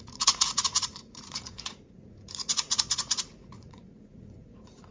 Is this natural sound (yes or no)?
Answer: no